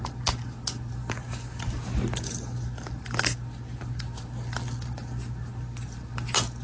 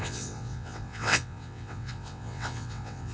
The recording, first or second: first